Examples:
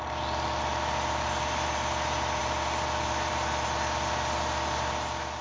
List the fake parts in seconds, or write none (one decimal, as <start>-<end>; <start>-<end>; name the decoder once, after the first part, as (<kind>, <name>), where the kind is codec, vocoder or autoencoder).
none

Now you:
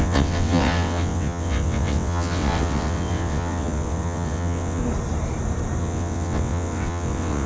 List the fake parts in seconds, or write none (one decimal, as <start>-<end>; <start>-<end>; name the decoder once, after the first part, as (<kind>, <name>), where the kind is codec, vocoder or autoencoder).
0.0-4.8 (vocoder, WaveNeXt); 5.8-7.5

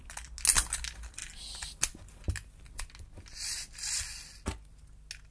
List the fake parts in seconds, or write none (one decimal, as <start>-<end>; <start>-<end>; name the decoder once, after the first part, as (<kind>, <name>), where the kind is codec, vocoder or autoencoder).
none